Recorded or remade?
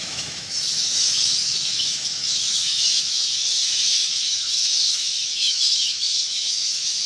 remade